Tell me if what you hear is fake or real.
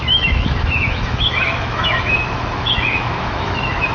fake